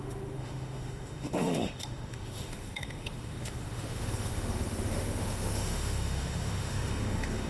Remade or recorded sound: remade